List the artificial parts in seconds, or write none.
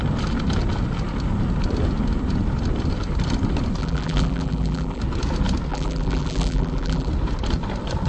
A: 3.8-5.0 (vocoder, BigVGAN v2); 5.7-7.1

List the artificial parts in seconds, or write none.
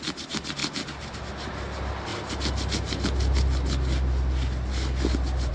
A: none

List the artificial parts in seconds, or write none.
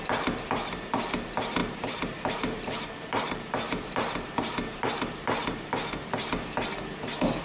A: 1.6-6.0 (vocoder, BigVGAN v2)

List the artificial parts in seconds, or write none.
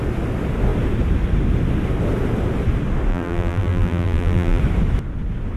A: 3.1-4.6 (vocoder, BigVGAN v2)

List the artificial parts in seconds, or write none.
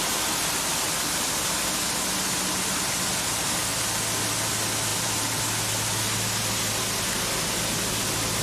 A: 4.9-5.4 (vocoder, BigVGAN v2)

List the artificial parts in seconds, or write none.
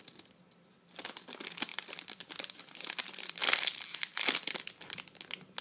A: 1.7-2.4 (vocoder, BigVGAN v2); 3.4-4.7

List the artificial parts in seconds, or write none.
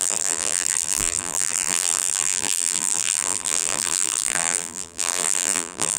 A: 0.0-6.0 (vocoder, BigVGAN v2)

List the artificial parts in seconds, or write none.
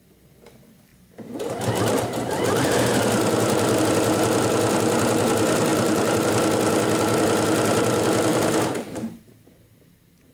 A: 0.9-3.8 (vocoder, BigVGAN v2); 5.7-6.2; 8.3-9.3